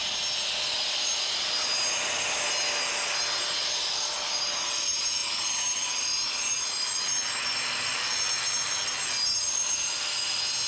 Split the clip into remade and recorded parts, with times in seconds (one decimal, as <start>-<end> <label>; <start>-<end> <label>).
0.0-10.7 recorded

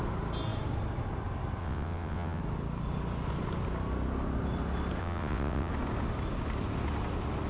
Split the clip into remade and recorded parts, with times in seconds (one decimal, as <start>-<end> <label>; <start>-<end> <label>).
0.0-1.6 recorded; 1.6-2.4 remade; 2.4-5.0 recorded; 5.0-5.7 remade; 5.7-7.5 recorded